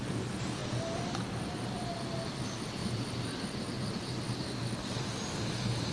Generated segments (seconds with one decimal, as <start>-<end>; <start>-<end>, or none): 2.8-3.4; 4.8-5.3